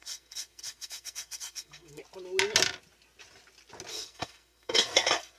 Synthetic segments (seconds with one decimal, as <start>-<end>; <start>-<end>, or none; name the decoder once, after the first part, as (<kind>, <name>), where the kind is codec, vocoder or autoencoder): 0.0-2.0 (codec, SNAC); 3.9-5.4